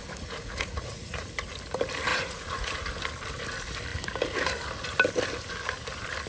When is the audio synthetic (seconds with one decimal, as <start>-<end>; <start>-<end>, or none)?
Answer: 0.0-1.3; 2.1-2.8